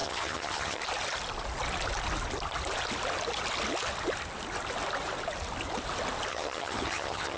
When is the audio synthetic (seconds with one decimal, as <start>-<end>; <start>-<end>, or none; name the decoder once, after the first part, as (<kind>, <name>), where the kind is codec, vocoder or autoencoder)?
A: 0.0-0.8 (vocoder, HiFi-GAN); 6.3-7.4